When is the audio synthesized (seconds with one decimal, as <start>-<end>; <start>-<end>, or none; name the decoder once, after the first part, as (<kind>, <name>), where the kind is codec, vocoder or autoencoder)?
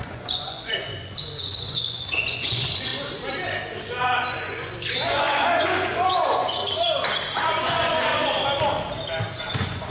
0.0-2.9 (vocoder, Vocos); 4.0-6.6; 7.4-8.1; 9.3-9.9